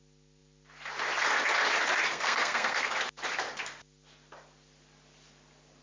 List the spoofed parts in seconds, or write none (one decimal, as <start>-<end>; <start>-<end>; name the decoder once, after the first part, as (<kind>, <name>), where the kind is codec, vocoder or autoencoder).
2.0-2.9 (codec, SNAC)